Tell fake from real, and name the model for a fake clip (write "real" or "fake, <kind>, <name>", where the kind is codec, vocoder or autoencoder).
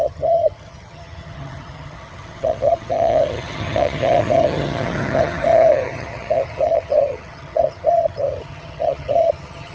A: fake, vocoder, HiFi-GAN